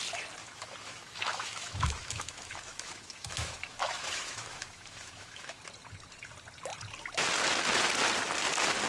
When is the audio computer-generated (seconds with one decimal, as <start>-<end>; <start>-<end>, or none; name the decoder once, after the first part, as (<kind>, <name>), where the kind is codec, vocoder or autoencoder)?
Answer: 0.4-5.6 (autoencoder, DAC-VAE)